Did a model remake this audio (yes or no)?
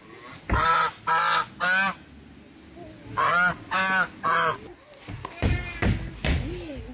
no